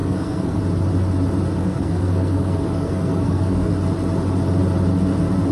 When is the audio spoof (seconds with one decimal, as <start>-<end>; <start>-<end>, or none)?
0.0-0.6; 1.6-3.7

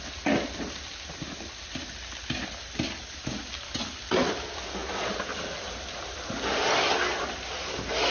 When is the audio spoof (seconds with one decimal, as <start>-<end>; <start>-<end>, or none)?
none

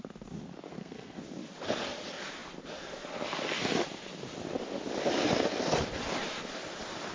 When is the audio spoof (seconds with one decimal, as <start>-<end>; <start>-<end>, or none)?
0.7-1.2

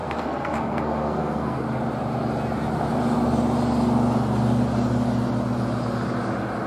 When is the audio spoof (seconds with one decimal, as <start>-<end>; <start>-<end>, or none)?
0.0-1.6

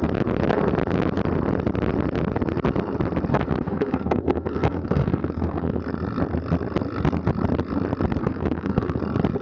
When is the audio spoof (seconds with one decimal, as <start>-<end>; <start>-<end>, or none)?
3.3-5.8; 8.2-9.0

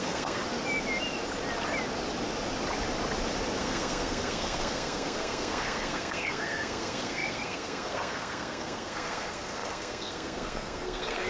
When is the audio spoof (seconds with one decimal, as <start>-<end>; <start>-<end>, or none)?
0.0-0.4; 3.6-11.3

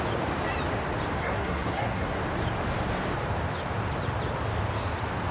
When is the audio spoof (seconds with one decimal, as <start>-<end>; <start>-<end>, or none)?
1.2-2.2